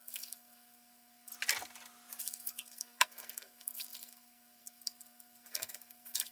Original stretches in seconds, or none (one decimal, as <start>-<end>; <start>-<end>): 1.3-2.2